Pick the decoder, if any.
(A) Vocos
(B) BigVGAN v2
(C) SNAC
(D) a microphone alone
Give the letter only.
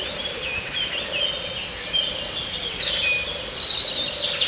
D